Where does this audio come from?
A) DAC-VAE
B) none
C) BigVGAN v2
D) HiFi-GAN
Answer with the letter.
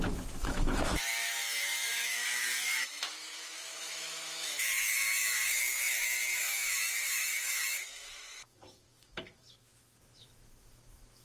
A